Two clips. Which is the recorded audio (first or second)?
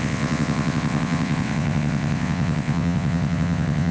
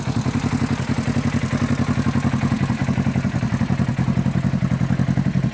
second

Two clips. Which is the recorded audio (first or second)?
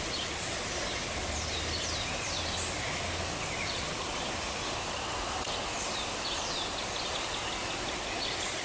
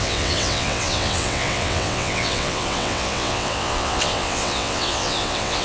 first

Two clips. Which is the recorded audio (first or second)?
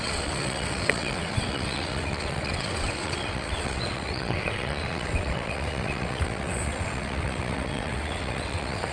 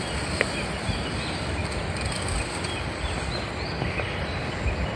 second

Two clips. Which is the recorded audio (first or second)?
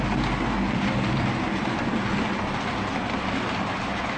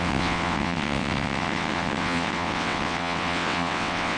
first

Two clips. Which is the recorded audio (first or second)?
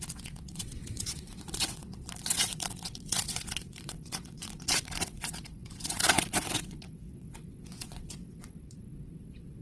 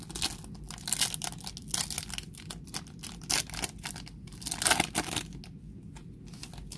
second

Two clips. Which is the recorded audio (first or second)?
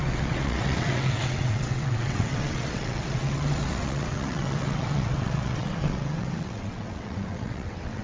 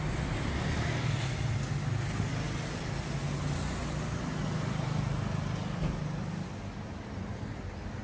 second